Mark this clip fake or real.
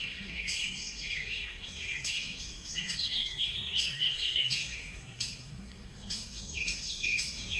fake